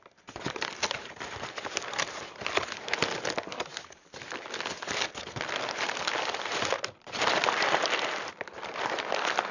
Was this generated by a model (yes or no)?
no